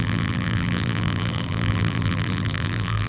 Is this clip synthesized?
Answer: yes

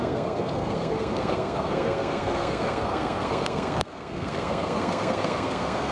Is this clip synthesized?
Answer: yes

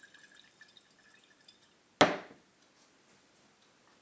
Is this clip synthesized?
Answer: no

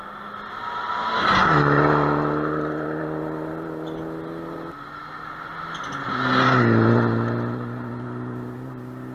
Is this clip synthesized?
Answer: no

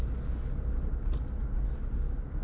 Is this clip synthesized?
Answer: no